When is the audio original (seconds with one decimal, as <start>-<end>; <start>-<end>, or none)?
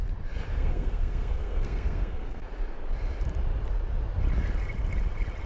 0.0-0.5; 2.4-5.5